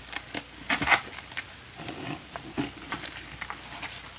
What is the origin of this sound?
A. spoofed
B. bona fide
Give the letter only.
B